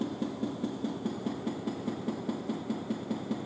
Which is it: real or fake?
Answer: real